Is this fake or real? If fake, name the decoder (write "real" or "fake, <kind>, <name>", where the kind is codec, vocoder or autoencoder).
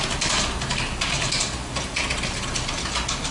real